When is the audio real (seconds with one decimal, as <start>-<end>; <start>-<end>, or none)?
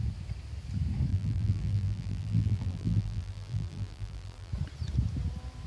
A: 0.0-1.1; 4.5-5.7